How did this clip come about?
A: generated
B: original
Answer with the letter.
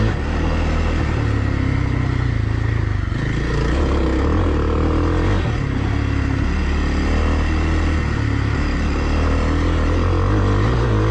B